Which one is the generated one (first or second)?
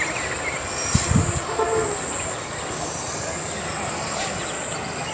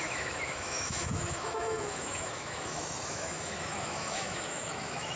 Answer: second